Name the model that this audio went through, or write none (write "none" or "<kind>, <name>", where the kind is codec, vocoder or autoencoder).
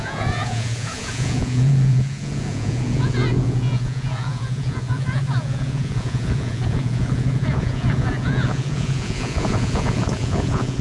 vocoder, Vocos